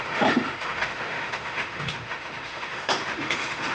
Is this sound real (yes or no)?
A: no